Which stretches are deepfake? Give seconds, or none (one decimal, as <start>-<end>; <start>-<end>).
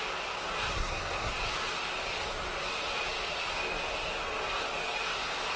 0.7-1.3